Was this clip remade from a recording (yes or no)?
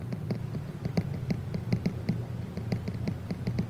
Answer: no